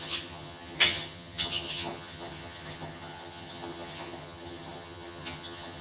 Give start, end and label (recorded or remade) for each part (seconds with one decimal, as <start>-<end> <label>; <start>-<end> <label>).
0.0-5.8 remade